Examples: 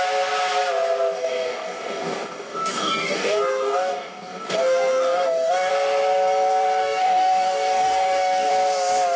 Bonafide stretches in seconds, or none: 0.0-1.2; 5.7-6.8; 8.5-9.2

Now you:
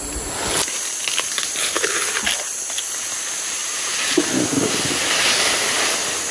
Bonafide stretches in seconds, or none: 0.0-1.6; 2.1-6.3

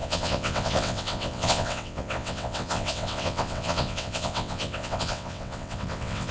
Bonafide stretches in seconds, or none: none

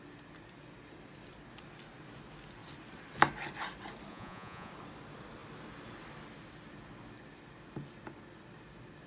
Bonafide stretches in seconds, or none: 0.0-4.1; 4.7-9.1

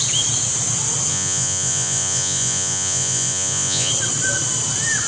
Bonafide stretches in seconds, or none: 0.0-1.1; 3.9-5.1